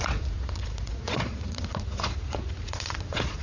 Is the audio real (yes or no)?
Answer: no